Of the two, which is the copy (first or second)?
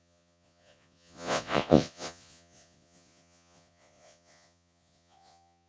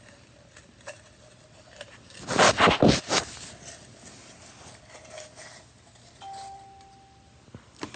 first